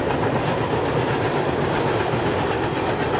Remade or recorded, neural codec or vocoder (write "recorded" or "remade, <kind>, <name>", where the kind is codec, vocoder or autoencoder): recorded